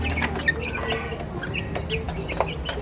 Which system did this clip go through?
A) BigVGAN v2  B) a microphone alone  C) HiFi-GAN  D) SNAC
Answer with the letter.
B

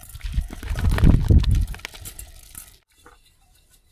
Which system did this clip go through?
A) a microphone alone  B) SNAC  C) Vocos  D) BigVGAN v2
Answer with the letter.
A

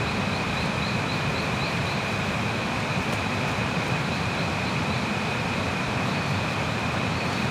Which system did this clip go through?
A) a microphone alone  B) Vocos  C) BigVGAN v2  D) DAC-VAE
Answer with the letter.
C